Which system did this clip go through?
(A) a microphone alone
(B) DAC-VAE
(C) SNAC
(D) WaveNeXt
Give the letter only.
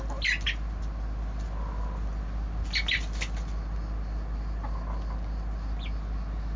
A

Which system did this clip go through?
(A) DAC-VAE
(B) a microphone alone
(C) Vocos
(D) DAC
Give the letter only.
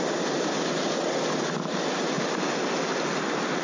B